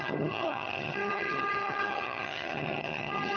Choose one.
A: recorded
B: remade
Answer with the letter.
B